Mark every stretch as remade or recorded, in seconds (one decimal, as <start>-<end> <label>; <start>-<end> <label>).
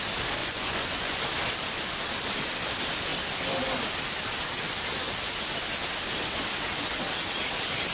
0.0-0.4 recorded; 0.4-1.2 remade; 1.2-7.9 recorded